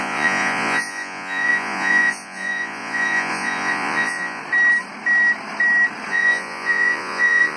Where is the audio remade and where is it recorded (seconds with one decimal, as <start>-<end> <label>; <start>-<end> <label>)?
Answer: 0.0-4.4 remade; 4.4-6.1 recorded; 6.1-7.6 remade